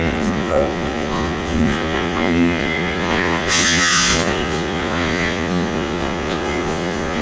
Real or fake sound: fake